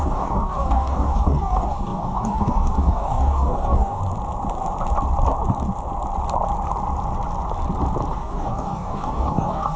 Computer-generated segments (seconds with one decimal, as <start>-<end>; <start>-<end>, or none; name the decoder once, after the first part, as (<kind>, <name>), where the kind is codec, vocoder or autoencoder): 0.0-4.0 (codec, DAC); 8.1-9.8